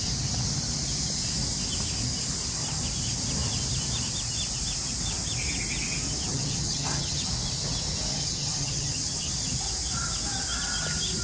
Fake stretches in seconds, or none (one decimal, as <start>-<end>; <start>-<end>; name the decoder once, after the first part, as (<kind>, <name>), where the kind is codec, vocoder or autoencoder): 6.3-7.3 (vocoder, HiFi-GAN); 8.1-9.3